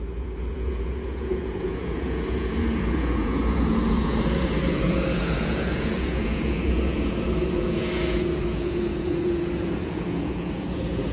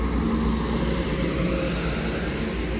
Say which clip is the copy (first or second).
first